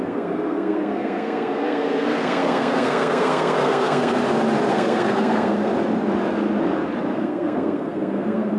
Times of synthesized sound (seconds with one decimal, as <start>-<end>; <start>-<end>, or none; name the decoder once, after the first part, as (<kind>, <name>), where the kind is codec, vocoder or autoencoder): 0.0-4.2 (codec, SNAC); 4.7-5.7; 7.1-8.6